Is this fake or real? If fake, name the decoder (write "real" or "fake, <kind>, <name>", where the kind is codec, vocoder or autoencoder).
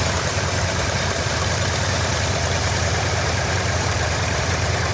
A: fake, vocoder, BigVGAN v2